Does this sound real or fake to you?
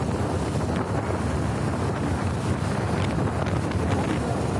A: real